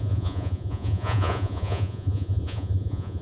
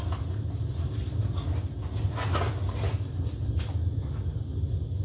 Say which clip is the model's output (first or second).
first